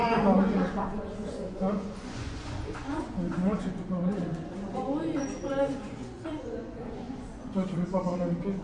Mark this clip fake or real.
fake